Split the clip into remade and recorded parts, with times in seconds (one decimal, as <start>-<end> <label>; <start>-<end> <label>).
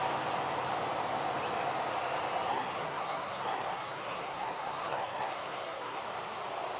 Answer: 0.0-2.5 recorded; 2.5-6.0 remade; 6.0-6.8 recorded